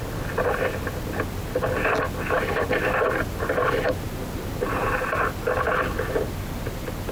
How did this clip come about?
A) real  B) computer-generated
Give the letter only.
A